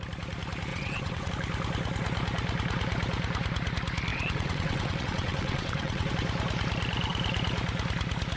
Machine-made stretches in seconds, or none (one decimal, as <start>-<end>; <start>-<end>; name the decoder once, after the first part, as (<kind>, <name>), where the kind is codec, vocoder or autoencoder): 0.7-1.3 (vocoder, WaveNeXt); 4.1-6.1